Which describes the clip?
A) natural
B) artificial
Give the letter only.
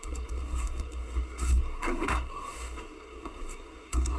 B